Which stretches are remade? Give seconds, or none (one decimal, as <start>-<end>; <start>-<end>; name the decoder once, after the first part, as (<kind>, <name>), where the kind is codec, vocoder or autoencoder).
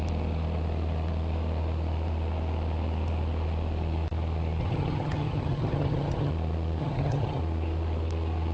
4.6-6.3 (vocoder, HiFi-GAN); 6.8-7.4